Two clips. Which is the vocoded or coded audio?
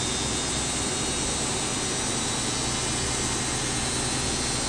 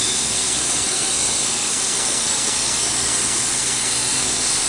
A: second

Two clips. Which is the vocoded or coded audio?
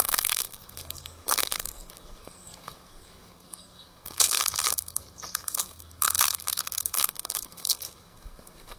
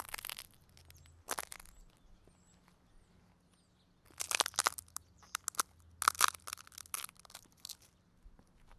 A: first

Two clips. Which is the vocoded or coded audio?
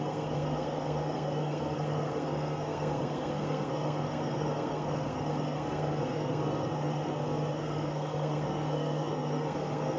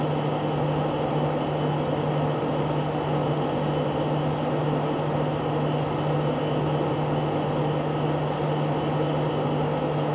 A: first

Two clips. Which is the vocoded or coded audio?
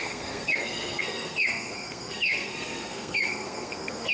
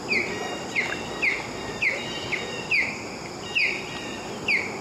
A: first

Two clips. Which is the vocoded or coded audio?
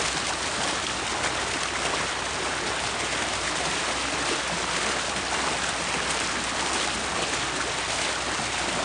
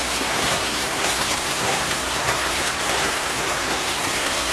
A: second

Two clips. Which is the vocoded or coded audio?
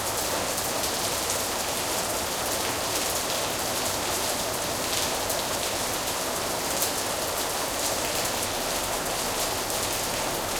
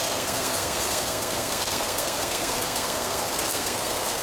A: second